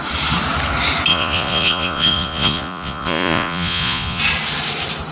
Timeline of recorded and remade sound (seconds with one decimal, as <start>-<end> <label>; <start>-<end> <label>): 0.0-1.1 recorded; 1.1-4.2 remade; 4.2-5.1 recorded